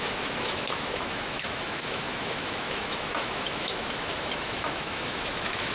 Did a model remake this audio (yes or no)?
yes